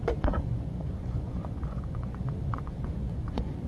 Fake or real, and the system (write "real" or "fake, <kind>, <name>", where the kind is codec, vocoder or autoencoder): fake, vocoder, Vocos